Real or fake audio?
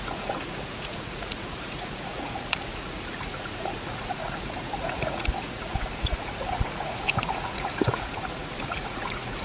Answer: fake